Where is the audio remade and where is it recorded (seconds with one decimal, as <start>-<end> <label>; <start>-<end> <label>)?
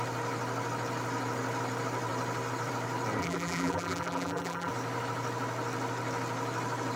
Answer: 0.0-3.2 recorded; 3.2-4.7 remade; 4.7-7.0 recorded